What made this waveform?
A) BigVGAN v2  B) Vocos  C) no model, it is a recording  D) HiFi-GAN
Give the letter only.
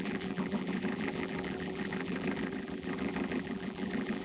A